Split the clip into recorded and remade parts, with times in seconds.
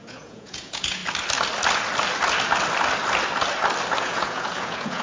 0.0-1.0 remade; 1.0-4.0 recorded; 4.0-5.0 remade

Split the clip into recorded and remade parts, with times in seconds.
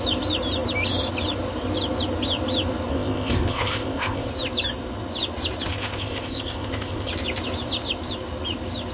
0.0-2.9 recorded; 2.9-4.3 remade; 4.3-5.7 recorded; 5.7-7.1 remade; 7.1-8.9 recorded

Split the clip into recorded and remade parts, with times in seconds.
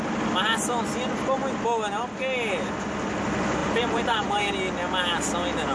0.0-3.6 recorded; 3.6-4.5 remade; 4.5-5.7 recorded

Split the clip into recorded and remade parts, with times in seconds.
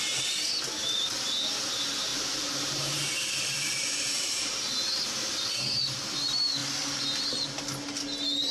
0.0-2.1 recorded; 2.1-4.8 remade; 4.8-8.5 recorded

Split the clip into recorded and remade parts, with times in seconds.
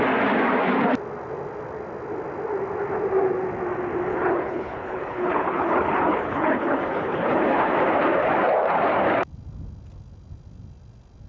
0.0-4.1 recorded; 4.1-7.7 remade; 7.7-11.3 recorded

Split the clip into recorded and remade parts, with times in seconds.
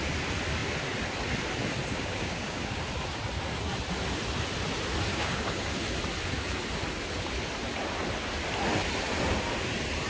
0.0-1.9 recorded; 1.9-2.8 remade; 2.8-5.1 recorded; 5.1-5.7 remade; 5.7-10.1 recorded